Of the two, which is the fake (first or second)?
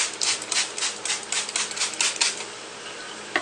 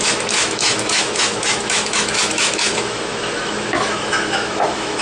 second